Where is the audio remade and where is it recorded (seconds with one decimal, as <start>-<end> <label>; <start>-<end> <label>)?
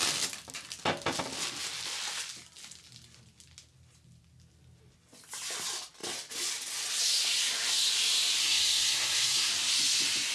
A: 0.0-8.4 recorded; 8.4-9.5 remade; 9.5-10.3 recorded